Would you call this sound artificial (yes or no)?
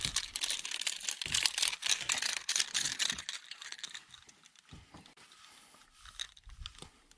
no